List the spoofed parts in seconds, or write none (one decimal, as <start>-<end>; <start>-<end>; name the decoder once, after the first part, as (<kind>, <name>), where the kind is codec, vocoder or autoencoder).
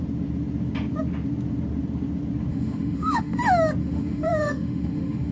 2.5-3.4 (autoencoder, DAC-VAE); 3.8-5.3